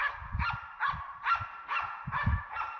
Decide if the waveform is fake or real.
real